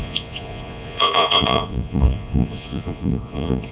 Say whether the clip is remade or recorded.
remade